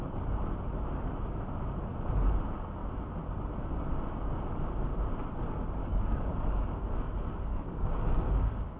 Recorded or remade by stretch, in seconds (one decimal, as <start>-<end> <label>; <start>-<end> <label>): 0.0-5.8 recorded; 5.8-6.8 remade; 6.8-7.5 recorded; 7.5-8.8 remade